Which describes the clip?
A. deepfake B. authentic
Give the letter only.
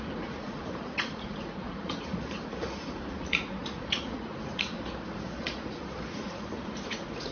A